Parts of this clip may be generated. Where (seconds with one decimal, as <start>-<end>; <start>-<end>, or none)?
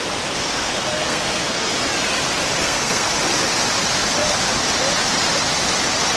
0.4-1.7; 2.6-3.1